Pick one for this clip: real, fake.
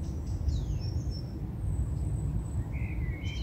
real